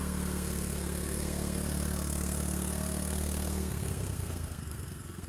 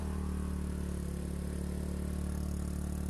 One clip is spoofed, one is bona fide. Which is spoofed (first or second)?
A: first